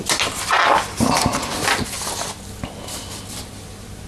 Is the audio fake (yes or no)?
no